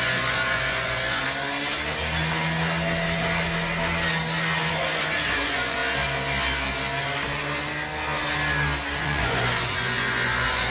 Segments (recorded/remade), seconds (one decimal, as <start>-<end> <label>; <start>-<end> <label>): 0.0-1.2 remade; 1.2-4.7 recorded; 4.7-5.8 remade; 5.8-9.0 recorded; 9.0-10.7 remade